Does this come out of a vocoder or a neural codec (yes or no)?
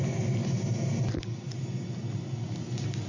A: no